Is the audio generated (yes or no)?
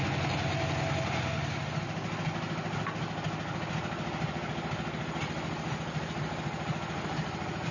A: no